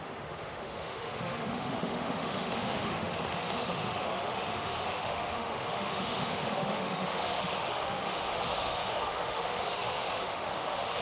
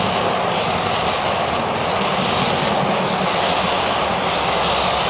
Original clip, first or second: second